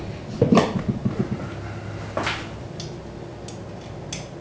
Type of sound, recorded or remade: recorded